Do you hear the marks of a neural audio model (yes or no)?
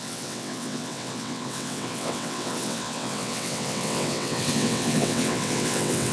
yes